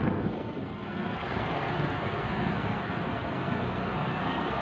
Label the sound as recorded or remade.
remade